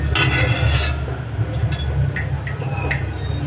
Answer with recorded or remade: recorded